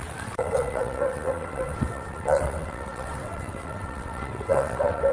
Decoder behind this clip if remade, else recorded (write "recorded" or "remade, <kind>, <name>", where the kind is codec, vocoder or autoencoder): remade, vocoder, WaveNeXt